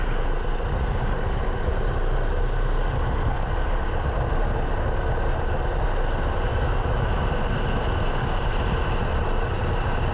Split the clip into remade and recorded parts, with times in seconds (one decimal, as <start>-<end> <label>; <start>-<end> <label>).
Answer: 0.0-6.5 recorded; 6.5-7.2 remade; 7.2-10.1 recorded